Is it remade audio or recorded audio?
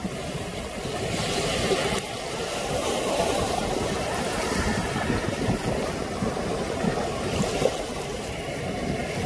remade